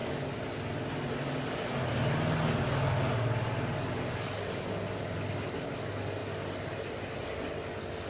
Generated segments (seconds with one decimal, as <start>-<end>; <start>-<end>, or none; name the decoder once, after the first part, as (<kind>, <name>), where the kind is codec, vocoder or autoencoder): none